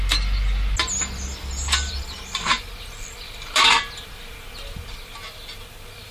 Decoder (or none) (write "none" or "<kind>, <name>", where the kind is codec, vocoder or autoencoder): none